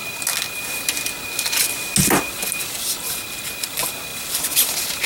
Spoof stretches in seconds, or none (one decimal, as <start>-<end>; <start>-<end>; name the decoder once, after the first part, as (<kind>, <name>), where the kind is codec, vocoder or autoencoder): none

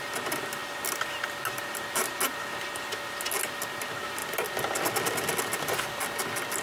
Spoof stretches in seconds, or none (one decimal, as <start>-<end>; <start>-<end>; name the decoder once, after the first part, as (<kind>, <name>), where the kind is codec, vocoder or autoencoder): none

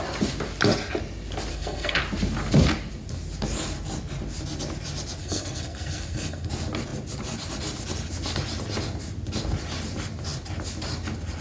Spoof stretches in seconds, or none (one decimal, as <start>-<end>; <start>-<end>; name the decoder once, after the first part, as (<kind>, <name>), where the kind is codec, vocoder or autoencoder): 1.5-2.0 (codec, SNAC); 5.2-6.5

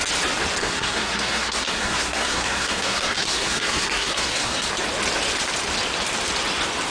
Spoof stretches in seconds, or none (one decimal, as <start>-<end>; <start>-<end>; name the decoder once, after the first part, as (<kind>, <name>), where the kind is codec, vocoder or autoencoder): 0.6-4.7 (codec, SNAC)